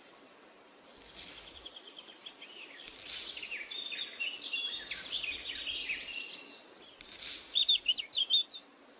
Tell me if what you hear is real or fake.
real